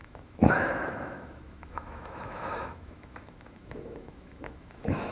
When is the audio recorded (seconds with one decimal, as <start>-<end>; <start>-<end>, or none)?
none